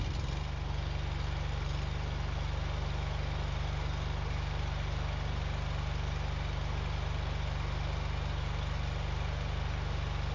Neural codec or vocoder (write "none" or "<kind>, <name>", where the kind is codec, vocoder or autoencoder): none